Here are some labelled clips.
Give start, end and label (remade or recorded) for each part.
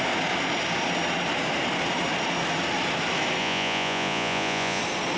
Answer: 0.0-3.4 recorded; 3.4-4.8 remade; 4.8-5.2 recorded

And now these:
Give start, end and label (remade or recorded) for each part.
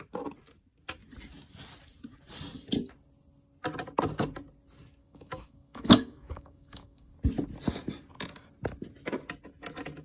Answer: 0.0-5.0 recorded; 5.0-7.1 remade; 7.1-10.0 recorded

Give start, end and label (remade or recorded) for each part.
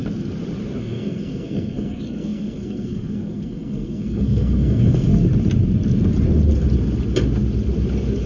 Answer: 0.0-0.8 recorded; 0.8-5.1 remade; 5.1-8.3 recorded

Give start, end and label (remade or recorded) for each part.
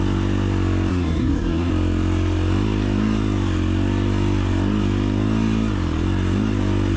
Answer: 0.0-0.9 recorded; 0.9-1.7 remade; 1.7-7.0 recorded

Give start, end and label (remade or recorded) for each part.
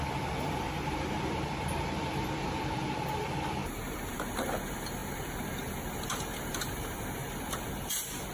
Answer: 0.0-3.6 remade; 3.6-4.1 recorded; 4.1-8.3 remade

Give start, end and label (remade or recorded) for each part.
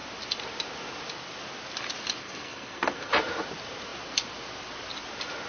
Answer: 0.0-2.2 recorded; 2.2-3.1 remade; 3.1-5.5 recorded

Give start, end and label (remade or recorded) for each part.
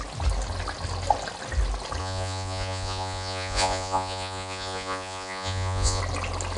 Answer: 0.0-2.0 recorded; 2.0-6.0 remade; 6.0-6.6 recorded